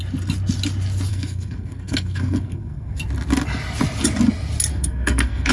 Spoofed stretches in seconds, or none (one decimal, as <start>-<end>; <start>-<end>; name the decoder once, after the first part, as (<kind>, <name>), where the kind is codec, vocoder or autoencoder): 1.1-3.0 (codec, SNAC); 4.7-5.5